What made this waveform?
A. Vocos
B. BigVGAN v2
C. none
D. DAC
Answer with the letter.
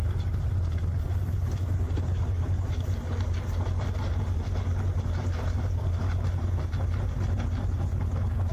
C